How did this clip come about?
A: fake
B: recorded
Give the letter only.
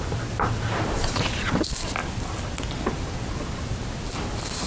B